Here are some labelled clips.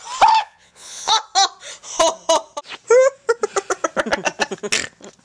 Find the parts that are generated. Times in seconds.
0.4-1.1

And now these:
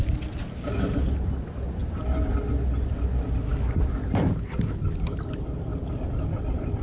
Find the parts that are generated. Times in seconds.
none

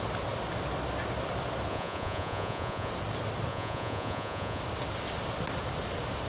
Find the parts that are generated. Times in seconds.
1.7-2.9; 3.5-4.6